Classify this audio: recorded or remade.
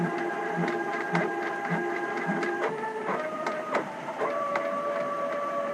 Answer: remade